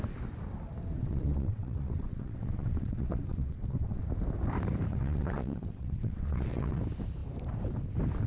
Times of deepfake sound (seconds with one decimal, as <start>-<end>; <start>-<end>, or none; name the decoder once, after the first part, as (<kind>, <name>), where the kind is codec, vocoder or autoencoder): 1.0-4.0 (vocoder, WaveNeXt); 4.9-6.8